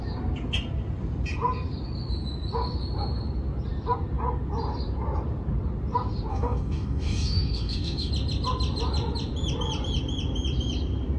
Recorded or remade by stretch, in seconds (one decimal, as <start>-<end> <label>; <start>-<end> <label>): 0.0-6.3 recorded; 6.3-8.1 remade; 8.1-11.2 recorded